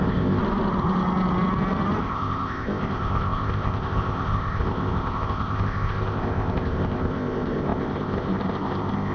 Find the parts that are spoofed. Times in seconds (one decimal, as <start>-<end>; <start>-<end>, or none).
0.0-0.4; 2.0-9.1